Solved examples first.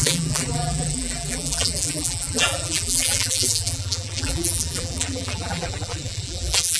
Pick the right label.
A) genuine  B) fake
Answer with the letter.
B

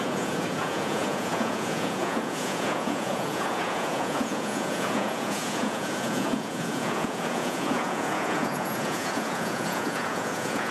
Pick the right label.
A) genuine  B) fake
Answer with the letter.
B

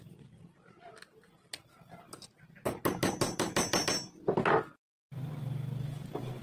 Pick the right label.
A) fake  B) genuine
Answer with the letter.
B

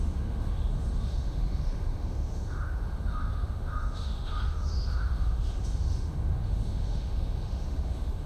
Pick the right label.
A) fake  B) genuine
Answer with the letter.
A